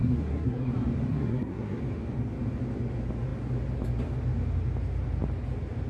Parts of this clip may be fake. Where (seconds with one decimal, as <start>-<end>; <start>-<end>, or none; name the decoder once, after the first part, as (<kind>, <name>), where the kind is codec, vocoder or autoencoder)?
0.0-0.7 (codec, SNAC); 1.1-1.8